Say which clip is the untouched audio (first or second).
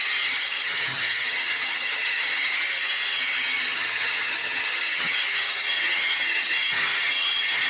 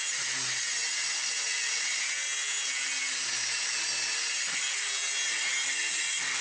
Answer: second